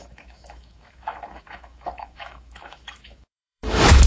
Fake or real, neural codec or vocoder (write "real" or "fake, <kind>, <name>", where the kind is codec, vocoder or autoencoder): fake, autoencoder, DAC-VAE